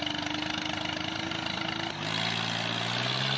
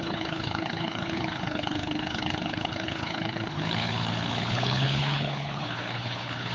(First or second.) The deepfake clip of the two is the second